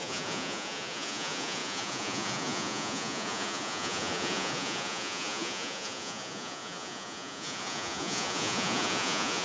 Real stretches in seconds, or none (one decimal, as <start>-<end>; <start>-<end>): none